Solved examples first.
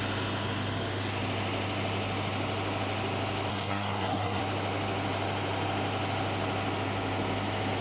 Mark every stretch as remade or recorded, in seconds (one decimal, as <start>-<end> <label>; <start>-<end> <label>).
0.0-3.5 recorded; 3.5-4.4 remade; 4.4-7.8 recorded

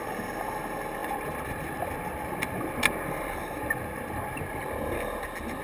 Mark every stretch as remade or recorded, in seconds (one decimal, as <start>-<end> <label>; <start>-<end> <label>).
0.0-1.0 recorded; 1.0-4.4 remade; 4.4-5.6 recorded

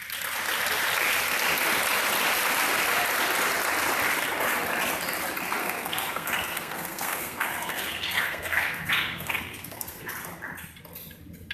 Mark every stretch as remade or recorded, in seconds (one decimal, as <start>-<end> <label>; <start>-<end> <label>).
0.0-5.6 recorded; 5.6-10.1 remade; 10.1-11.5 recorded

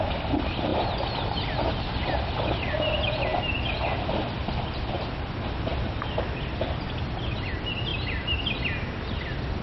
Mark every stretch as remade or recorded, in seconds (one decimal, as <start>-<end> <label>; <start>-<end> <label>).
0.0-7.9 recorded; 7.9-8.4 remade; 8.4-9.6 recorded

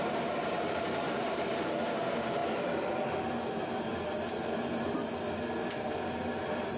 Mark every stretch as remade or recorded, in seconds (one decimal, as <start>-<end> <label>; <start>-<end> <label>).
0.0-2.4 remade; 2.4-6.8 recorded

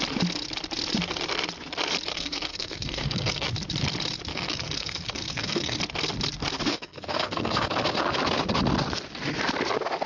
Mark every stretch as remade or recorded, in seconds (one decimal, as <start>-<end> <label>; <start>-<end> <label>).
0.0-2.1 recorded; 2.1-3.5 remade; 3.5-4.3 recorded; 4.3-5.8 remade; 5.8-6.7 recorded; 6.7-7.7 remade; 7.7-10.1 recorded